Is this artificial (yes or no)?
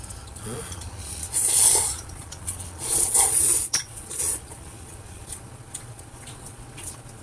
yes